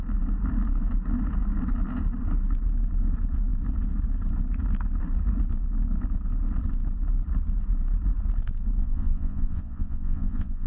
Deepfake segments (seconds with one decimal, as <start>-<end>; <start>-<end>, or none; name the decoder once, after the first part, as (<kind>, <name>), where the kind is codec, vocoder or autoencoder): 8.8-10.7 (vocoder, Vocos)